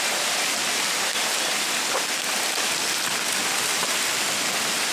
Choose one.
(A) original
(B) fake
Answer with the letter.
A